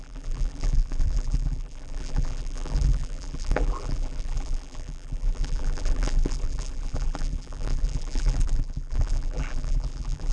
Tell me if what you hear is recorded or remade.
remade